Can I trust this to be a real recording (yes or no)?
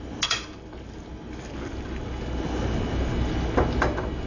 yes